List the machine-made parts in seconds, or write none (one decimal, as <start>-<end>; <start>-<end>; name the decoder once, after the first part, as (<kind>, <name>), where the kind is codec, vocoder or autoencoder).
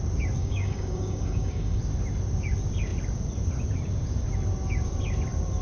0.4-1.8 (codec, DAC)